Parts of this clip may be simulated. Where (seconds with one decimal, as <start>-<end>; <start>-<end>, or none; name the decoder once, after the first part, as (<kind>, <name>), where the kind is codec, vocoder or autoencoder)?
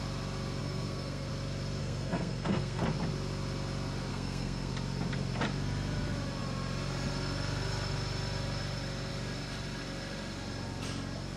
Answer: 0.6-1.3 (codec, SNAC); 1.8-2.8; 4.1-4.7